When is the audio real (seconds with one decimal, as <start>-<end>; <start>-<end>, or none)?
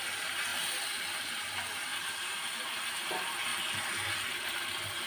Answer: 0.5-1.3; 3.5-5.1